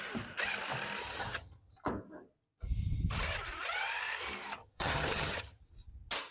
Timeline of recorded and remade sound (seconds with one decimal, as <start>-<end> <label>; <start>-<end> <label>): 0.0-1.0 recorded; 1.0-1.7 remade; 1.7-4.6 recorded; 4.6-5.6 remade; 5.6-6.3 recorded